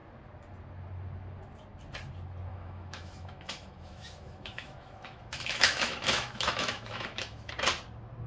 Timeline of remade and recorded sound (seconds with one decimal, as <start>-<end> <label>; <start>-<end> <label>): 0.0-2.5 recorded; 2.5-7.5 remade; 7.5-8.3 recorded